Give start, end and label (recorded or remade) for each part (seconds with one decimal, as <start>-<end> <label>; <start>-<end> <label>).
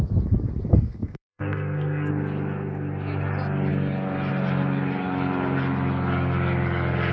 0.0-0.7 recorded; 0.7-2.1 remade; 2.1-7.1 recorded